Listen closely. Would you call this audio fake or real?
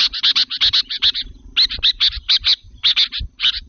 real